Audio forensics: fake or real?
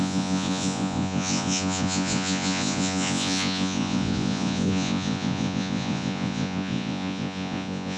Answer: fake